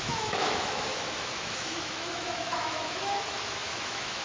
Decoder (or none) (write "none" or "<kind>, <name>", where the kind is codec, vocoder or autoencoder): autoencoder, DAC-VAE